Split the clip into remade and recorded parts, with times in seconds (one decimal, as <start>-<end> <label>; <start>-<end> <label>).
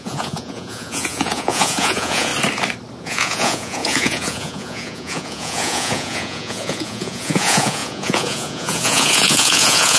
0.0-2.3 remade; 2.3-3.0 recorded; 3.0-10.0 remade